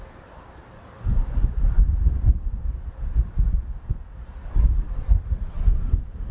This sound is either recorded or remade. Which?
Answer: recorded